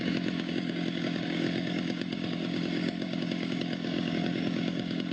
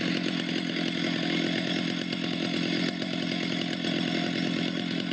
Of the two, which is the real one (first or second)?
second